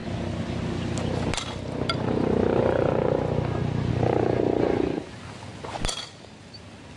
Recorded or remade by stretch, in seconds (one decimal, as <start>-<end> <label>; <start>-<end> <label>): 0.0-7.0 recorded